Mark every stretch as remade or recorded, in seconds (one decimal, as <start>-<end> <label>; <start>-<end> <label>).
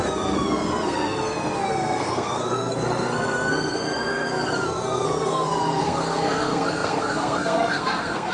0.0-8.3 remade